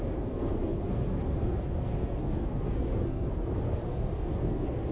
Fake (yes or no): yes